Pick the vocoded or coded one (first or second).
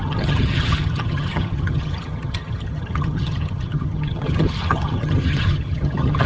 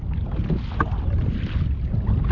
first